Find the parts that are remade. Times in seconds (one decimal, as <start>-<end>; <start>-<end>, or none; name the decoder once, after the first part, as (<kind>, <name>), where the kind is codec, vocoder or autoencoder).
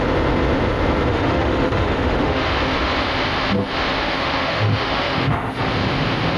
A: 1.1-2.9 (autoencoder, DAC-VAE); 4.0-5.6